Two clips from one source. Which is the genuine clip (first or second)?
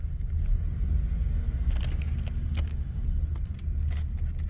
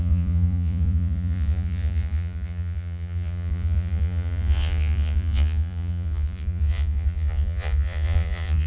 first